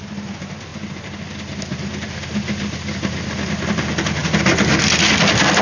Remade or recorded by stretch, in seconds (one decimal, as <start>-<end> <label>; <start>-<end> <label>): 0.0-5.6 recorded